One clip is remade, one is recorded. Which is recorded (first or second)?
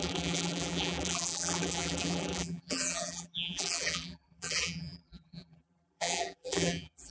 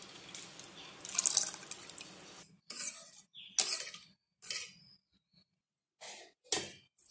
second